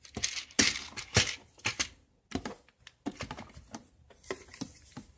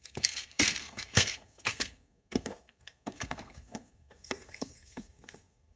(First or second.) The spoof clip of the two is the second